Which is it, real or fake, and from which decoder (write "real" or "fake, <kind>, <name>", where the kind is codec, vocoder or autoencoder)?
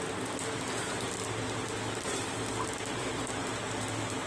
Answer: real